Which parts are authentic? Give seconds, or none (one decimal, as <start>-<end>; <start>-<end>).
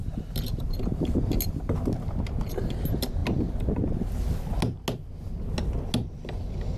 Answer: 0.0-6.8